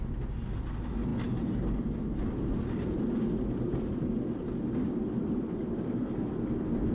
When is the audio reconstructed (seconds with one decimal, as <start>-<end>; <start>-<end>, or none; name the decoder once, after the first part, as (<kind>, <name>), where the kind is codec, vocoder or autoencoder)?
none